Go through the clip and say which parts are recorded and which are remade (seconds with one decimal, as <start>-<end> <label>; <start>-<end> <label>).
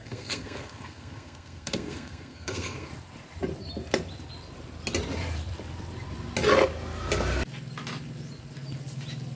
0.0-2.9 remade; 2.9-9.4 recorded